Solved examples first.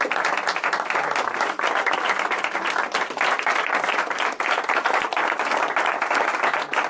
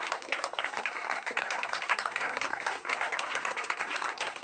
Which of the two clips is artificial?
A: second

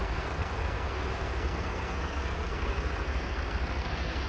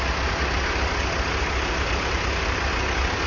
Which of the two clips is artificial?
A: first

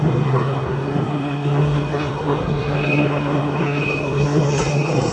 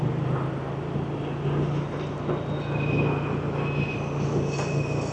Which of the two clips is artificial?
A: first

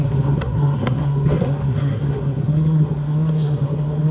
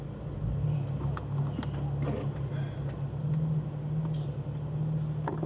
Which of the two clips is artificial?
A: first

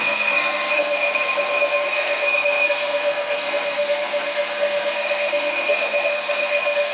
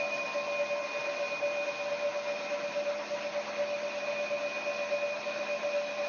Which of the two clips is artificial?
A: first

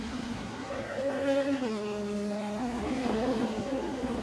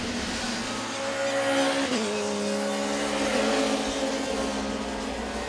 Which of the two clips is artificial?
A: first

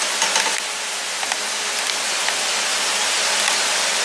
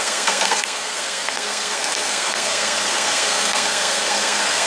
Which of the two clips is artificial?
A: second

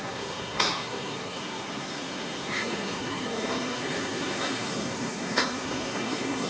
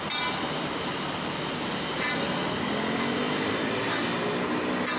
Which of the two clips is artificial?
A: first